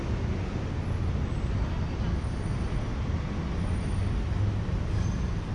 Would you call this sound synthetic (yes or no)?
no